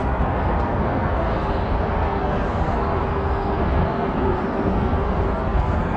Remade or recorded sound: remade